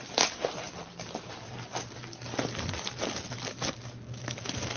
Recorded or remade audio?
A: recorded